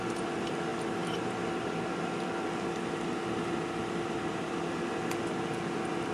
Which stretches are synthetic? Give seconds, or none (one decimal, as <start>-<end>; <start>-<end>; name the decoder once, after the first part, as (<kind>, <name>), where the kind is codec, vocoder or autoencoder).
none